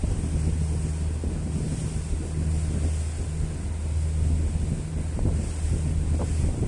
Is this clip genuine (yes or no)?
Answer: yes